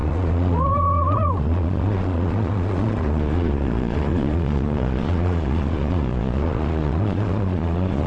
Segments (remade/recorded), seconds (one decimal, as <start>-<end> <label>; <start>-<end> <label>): 0.0-8.1 remade